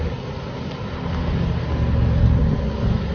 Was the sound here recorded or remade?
recorded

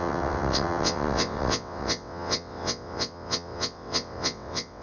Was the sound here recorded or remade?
remade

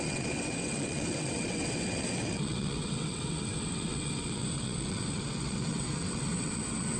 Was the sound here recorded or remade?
remade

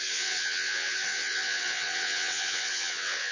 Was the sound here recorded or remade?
remade